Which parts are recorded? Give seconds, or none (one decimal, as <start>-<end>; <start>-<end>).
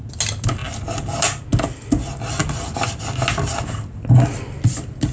0.0-5.1